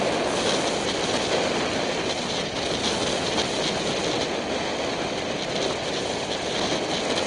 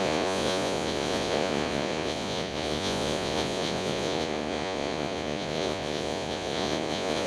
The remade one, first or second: second